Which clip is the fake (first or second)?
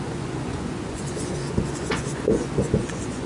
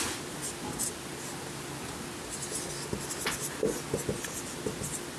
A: first